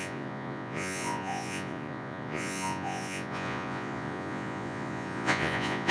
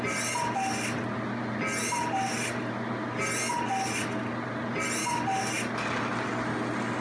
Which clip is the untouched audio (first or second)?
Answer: second